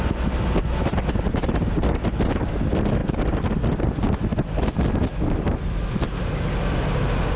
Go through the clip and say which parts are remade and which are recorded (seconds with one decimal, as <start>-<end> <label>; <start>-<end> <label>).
0.0-7.4 recorded

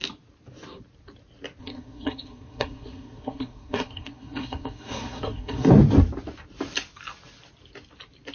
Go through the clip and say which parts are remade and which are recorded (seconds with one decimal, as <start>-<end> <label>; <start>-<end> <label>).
0.0-1.6 recorded; 1.6-5.7 remade; 5.7-8.3 recorded

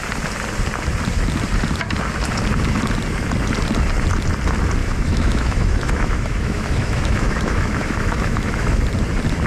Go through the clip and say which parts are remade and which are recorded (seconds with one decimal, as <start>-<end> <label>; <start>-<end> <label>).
0.0-4.8 recorded; 4.8-8.8 remade; 8.8-9.5 recorded

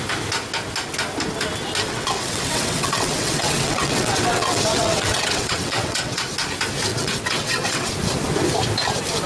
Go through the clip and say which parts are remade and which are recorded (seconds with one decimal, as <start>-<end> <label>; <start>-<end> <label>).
0.0-1.9 recorded; 1.9-6.2 remade; 6.2-6.9 recorded; 6.9-7.9 remade; 7.9-9.3 recorded

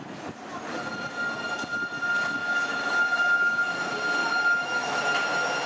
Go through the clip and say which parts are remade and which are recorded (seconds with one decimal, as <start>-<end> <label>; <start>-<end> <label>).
0.0-2.4 recorded; 2.4-3.8 remade; 3.8-4.2 recorded; 4.2-5.0 remade; 5.0-5.7 recorded

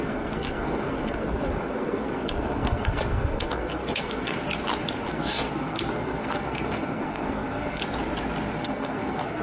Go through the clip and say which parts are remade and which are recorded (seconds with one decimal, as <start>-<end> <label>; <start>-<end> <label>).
0.0-4.4 remade; 4.4-5.1 recorded; 5.1-7.8 remade; 7.8-8.6 recorded; 8.6-9.4 remade